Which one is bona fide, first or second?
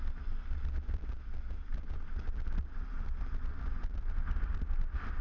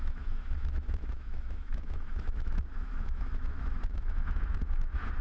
first